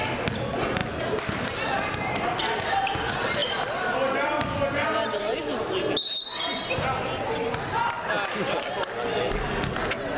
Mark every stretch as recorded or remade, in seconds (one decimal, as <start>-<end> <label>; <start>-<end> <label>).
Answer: 0.0-10.2 recorded